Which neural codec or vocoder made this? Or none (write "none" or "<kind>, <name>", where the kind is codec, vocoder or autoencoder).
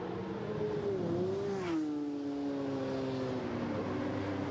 none